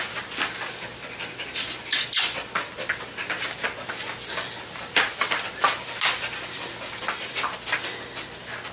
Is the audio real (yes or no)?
yes